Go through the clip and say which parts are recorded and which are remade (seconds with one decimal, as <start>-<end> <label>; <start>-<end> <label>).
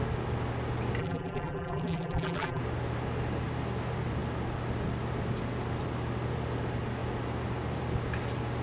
0.0-1.0 recorded; 1.0-2.6 remade; 2.6-8.6 recorded